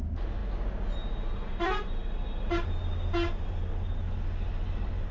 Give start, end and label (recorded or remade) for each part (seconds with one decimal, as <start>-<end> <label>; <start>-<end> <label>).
0.0-5.1 recorded